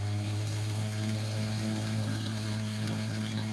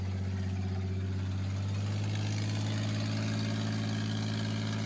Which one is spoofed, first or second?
first